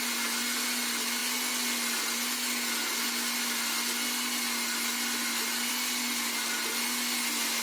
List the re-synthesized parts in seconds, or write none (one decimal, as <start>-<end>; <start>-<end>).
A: none